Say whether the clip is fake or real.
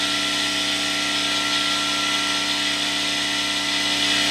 real